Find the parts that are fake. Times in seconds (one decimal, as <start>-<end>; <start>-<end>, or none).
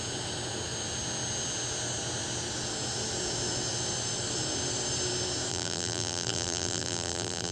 5.5-7.5